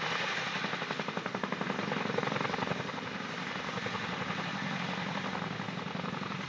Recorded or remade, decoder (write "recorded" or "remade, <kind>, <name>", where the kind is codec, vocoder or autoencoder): recorded